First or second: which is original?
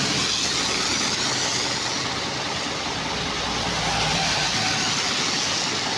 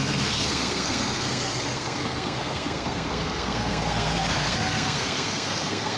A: first